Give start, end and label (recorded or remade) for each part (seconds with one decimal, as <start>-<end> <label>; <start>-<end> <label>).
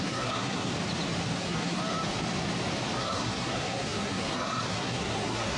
0.0-0.7 remade; 0.7-1.4 recorded; 1.4-1.8 remade; 1.8-3.0 recorded; 3.0-5.6 remade